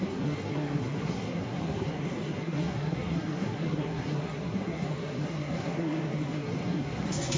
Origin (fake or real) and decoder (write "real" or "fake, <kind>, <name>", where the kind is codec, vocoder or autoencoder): fake, codec, SNAC